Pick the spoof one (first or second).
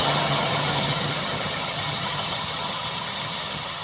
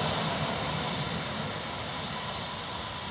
first